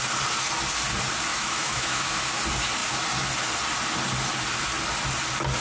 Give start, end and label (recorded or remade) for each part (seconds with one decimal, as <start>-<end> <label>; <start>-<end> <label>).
0.0-1.3 recorded; 1.3-2.4 remade; 2.4-5.6 recorded